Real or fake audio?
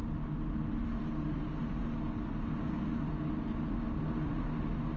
real